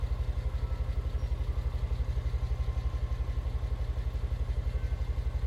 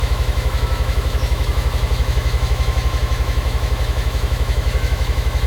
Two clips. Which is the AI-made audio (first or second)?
second